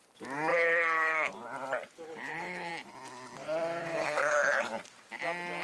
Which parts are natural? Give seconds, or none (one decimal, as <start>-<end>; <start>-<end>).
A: 0.0-0.5; 1.3-2.1; 2.7-3.8; 4.7-5.6